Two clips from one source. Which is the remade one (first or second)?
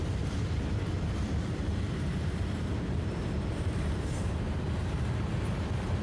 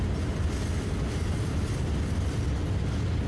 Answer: first